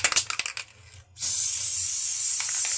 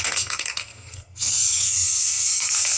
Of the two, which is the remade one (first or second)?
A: second